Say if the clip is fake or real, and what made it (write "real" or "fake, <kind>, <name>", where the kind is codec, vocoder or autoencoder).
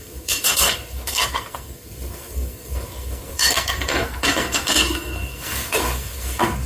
fake, codec, SNAC